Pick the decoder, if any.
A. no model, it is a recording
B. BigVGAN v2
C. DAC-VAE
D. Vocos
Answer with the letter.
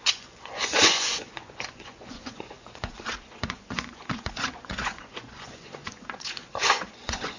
D